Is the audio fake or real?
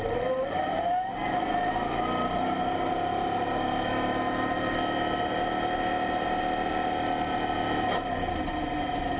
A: real